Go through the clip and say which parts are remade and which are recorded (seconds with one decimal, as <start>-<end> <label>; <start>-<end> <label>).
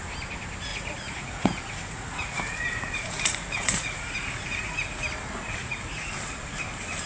0.0-0.7 recorded; 0.7-5.0 remade; 5.0-5.6 recorded; 5.6-6.1 remade; 6.1-7.1 recorded